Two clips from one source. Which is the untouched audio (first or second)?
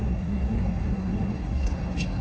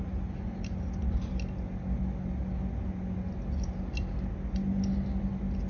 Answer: second